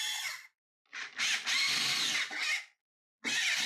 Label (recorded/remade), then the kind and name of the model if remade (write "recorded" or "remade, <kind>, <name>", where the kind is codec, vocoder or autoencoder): recorded